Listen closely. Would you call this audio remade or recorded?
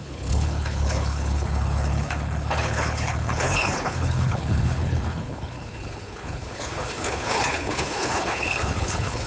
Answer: remade